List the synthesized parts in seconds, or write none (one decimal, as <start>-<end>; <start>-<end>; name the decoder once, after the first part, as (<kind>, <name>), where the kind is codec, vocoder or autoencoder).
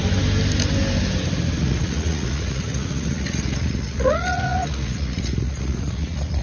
1.6-6.4 (vocoder, Vocos)